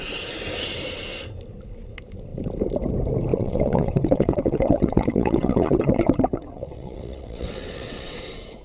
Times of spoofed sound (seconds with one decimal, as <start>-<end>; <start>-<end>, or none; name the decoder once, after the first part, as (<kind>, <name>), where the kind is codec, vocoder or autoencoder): 3.3-8.2 (vocoder, WaveNeXt)